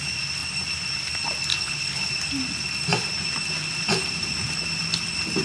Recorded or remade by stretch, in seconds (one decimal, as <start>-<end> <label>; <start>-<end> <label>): 0.0-1.5 recorded; 1.5-2.1 remade; 2.1-5.4 recorded

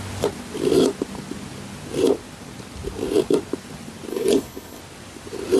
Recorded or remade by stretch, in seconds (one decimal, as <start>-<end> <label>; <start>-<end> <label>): 0.0-4.1 recorded; 4.1-4.8 remade; 4.8-5.6 recorded

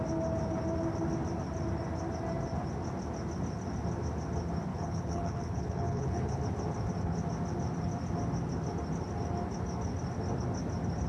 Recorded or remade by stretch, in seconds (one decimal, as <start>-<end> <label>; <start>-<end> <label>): 0.0-4.7 recorded; 4.7-6.4 remade; 6.4-11.1 recorded

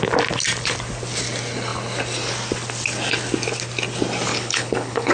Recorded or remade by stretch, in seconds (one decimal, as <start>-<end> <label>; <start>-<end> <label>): 0.0-4.3 recorded; 4.3-5.1 remade

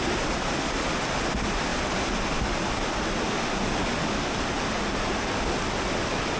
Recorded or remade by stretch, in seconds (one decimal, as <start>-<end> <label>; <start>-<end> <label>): 0.0-6.4 recorded

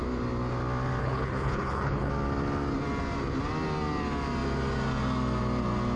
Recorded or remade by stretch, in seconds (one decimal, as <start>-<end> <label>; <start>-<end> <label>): 0.0-1.0 recorded; 1.0-2.1 remade; 2.1-6.0 recorded

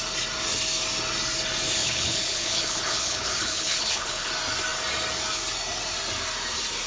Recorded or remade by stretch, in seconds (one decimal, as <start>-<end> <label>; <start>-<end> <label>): 0.0-1.8 recorded; 1.8-4.3 remade; 4.3-6.9 recorded